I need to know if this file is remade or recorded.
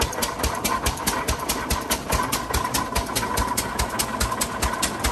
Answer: recorded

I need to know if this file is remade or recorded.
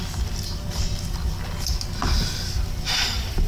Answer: recorded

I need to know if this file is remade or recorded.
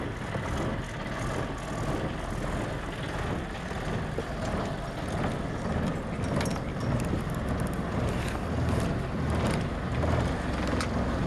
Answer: recorded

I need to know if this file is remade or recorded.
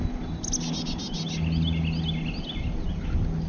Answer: recorded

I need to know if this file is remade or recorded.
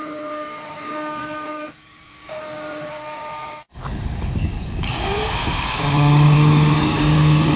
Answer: remade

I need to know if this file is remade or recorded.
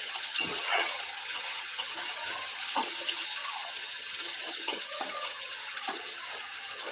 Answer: remade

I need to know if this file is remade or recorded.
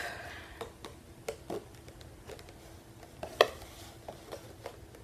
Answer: recorded